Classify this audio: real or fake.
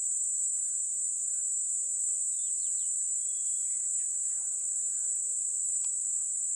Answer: fake